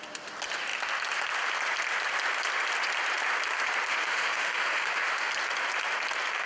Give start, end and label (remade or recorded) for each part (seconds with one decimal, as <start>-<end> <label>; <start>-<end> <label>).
0.0-3.9 recorded; 3.9-5.3 remade; 5.3-6.5 recorded